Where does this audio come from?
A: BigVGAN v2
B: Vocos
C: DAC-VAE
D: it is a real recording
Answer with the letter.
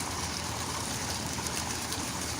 A